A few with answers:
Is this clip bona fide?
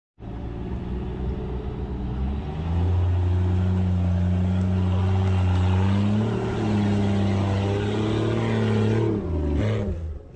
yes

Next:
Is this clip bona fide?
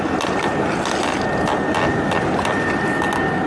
yes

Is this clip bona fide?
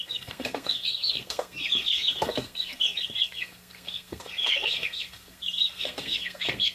no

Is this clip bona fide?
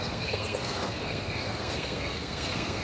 no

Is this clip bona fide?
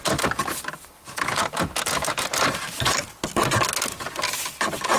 yes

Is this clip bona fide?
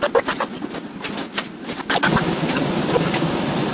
yes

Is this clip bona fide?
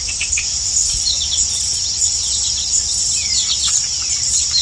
no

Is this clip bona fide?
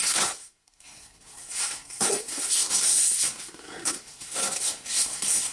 no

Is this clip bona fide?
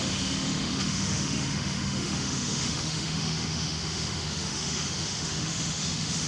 no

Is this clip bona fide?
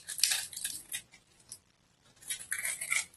yes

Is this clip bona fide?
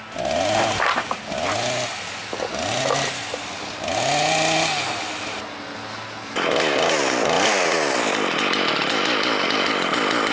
yes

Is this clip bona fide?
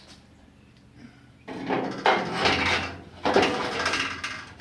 yes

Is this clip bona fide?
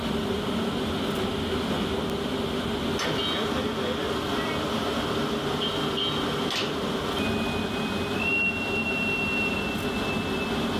yes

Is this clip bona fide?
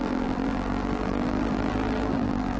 no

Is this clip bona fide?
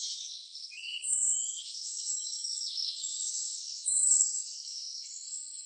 no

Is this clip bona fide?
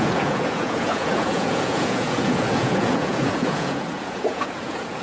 no